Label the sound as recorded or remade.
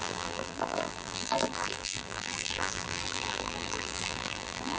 remade